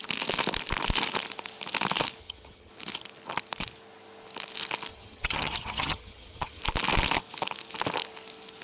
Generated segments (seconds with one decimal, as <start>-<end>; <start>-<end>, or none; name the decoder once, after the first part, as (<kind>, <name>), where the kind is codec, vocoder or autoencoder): 2.2-2.7 (vocoder, HiFi-GAN); 4.9-6.6